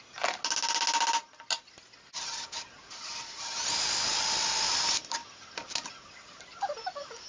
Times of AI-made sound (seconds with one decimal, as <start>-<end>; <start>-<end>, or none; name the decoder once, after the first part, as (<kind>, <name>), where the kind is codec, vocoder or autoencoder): none